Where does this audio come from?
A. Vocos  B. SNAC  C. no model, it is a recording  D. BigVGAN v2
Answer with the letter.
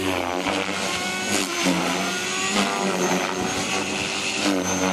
C